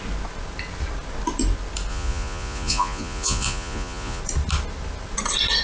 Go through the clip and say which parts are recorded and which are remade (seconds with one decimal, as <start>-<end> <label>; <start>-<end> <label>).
0.0-1.9 recorded; 1.9-4.2 remade; 4.2-5.6 recorded

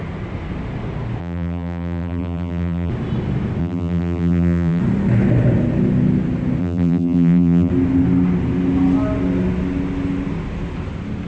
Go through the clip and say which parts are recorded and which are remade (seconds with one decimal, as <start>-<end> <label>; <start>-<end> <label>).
0.0-1.2 recorded; 1.2-2.9 remade; 2.9-3.6 recorded; 3.6-4.8 remade; 4.8-6.6 recorded; 6.6-7.7 remade; 7.7-11.3 recorded